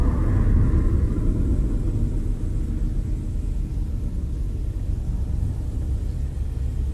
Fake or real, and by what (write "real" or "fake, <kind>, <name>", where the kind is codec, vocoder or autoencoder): real